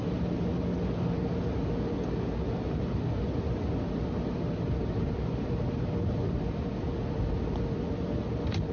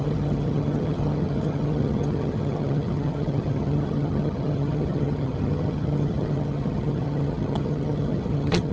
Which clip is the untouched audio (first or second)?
first